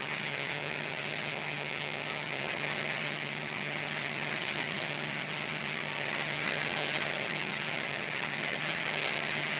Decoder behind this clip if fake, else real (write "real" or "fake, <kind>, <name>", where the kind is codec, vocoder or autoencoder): fake, vocoder, HiFi-GAN